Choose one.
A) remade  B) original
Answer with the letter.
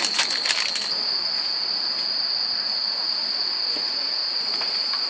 B